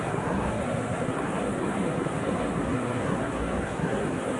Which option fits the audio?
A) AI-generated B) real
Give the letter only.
A